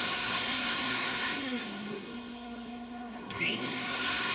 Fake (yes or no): yes